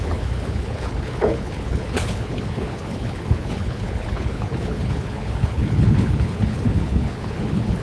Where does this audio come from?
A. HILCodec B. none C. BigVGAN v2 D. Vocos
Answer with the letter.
A